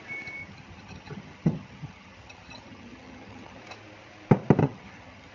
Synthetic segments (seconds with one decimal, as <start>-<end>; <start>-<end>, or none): 0.4-3.6; 4.6-5.3